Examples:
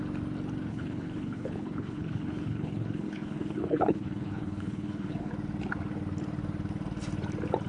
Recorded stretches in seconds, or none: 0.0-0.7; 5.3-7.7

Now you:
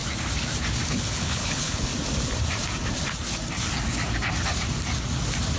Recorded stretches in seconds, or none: 0.0-0.9; 1.9-5.6

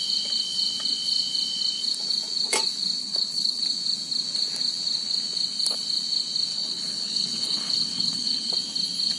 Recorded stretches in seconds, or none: 0.0-3.0; 3.6-6.5; 8.5-9.2

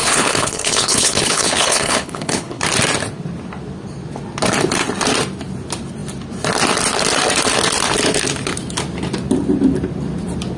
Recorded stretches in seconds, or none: 2.6-10.6